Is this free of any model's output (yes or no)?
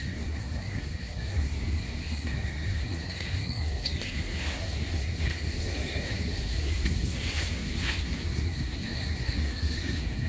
no